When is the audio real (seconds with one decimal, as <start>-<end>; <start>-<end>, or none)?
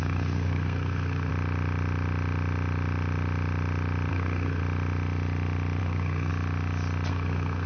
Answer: 1.3-4.1; 4.6-5.8; 6.3-7.1